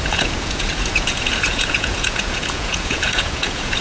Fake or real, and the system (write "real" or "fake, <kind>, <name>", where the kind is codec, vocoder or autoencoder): fake, vocoder, Vocos